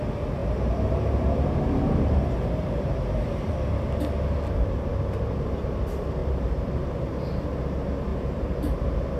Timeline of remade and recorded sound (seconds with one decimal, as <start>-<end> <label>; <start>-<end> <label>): 0.0-0.4 recorded; 0.4-3.5 remade; 3.5-6.2 recorded; 6.2-7.5 remade; 7.5-8.1 recorded; 8.1-9.2 remade